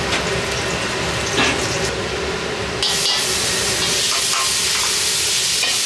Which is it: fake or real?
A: real